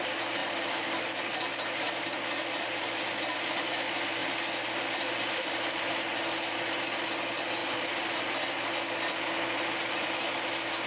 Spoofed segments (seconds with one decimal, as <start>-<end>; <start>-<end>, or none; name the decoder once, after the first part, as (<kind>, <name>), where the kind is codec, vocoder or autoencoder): 4.2-5.8 (vocoder, BigVGAN v2); 7.6-8.2